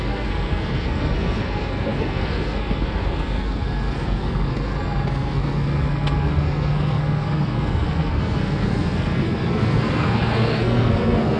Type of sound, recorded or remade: remade